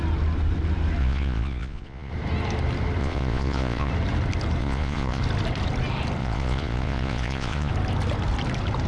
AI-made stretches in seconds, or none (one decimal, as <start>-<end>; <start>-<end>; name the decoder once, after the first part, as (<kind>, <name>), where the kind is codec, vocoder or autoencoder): 1.0-2.1 (vocoder, Vocos); 3.0-3.9; 4.6-5.2; 6.2-7.7